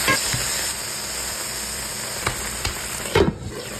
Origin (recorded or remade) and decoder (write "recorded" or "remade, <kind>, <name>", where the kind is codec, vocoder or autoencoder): recorded